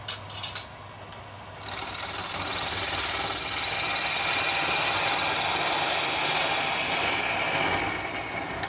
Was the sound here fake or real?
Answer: real